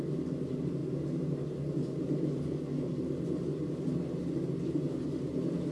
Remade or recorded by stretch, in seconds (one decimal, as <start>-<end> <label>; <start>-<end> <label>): 0.0-5.7 recorded